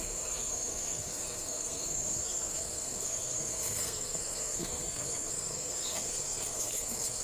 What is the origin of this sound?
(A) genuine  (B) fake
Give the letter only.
B